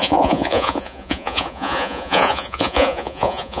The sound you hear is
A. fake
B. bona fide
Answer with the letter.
A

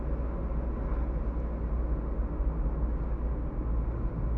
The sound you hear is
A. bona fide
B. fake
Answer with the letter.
A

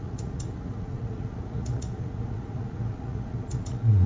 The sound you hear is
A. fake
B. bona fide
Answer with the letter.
A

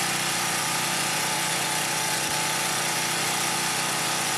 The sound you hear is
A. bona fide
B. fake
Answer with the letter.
B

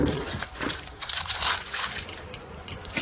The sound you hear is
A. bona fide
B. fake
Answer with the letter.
B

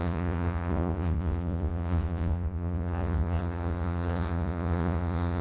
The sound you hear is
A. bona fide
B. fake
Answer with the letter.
B